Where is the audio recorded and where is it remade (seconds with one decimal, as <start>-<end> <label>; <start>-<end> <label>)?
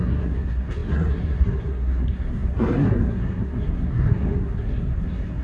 0.0-5.4 remade